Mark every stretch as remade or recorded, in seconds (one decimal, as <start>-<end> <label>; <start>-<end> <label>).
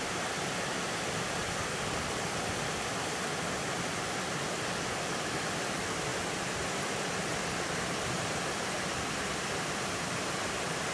0.0-10.9 recorded